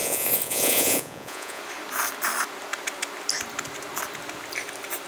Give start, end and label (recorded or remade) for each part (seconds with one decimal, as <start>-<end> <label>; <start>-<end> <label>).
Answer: 0.0-1.6 remade; 1.6-5.1 recorded